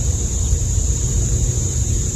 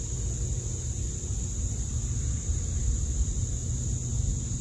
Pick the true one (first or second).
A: second